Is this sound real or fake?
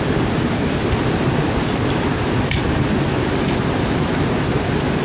real